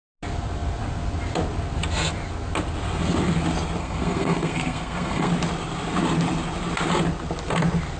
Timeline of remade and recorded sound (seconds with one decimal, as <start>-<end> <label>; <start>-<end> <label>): 0.0-3.8 recorded; 3.8-5.3 remade; 5.3-8.0 recorded